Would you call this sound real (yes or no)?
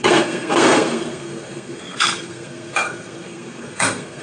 no